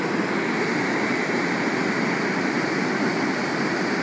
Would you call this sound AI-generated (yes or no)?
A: no